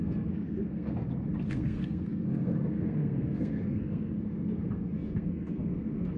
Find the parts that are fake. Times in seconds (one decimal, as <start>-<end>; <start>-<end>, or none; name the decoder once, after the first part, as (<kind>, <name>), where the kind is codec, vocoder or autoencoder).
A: 0.0-1.0 (codec, SNAC); 1.5-6.2